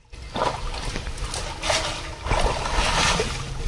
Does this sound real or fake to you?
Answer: real